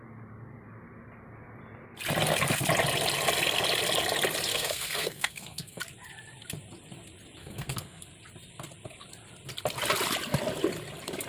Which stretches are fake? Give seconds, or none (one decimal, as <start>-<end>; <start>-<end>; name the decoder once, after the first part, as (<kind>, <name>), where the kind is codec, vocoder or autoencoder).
4.5-5.8 (codec, SNAC); 7.4-8.0